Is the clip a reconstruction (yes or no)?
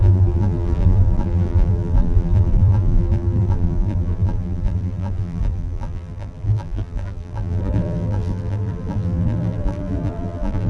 yes